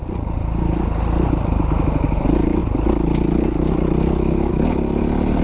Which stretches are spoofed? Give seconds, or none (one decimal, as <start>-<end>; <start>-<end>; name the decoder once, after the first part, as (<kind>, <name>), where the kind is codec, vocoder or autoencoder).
0.0-0.7 (vocoder, BigVGAN v2); 1.3-2.6; 4.5-5.4